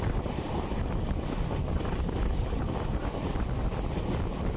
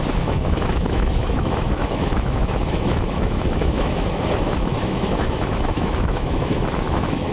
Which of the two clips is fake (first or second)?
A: second